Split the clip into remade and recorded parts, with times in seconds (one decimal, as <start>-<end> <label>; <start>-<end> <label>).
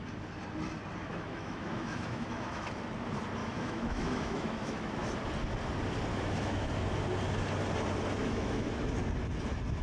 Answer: 0.0-1.0 recorded; 1.0-2.7 remade; 2.7-3.4 recorded; 3.4-5.1 remade; 5.1-6.1 recorded; 6.1-6.7 remade; 6.7-8.2 recorded; 8.2-8.7 remade; 8.7-9.8 recorded